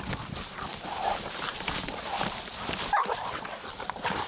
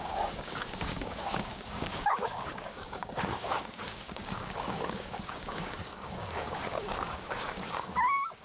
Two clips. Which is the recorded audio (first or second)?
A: first